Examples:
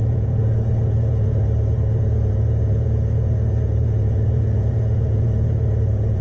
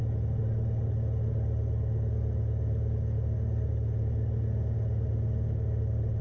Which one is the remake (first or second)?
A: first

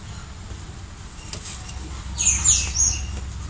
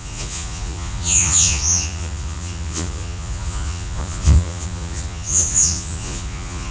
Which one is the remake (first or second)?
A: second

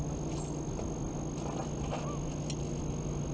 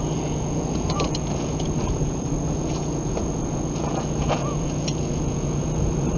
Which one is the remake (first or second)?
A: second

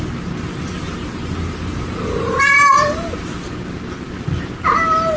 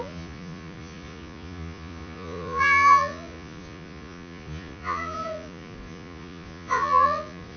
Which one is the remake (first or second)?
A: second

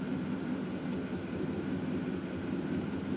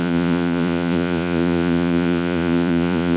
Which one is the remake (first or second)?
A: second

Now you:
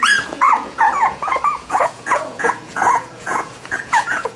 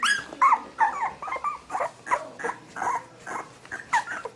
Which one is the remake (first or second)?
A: first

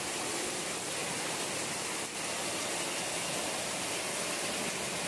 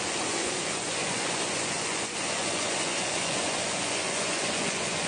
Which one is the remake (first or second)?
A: second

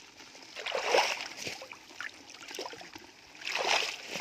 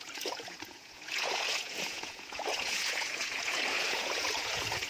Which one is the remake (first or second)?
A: second